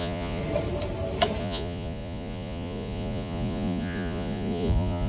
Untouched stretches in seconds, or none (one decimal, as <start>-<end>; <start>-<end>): 0.4-1.4